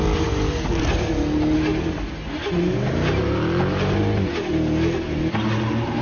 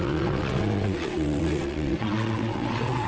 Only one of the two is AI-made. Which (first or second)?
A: second